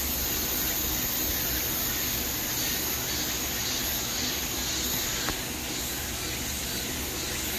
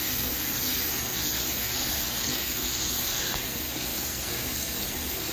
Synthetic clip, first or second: second